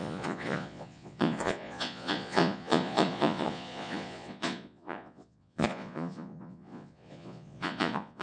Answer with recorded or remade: remade